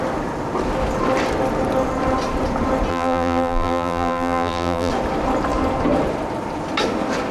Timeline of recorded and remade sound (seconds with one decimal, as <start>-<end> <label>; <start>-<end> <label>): 0.0-2.9 recorded; 2.9-4.9 remade; 4.9-7.3 recorded